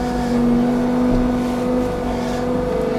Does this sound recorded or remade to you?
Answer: recorded